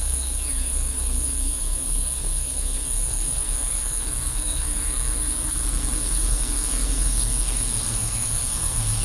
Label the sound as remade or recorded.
remade